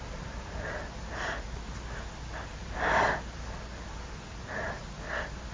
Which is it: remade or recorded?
recorded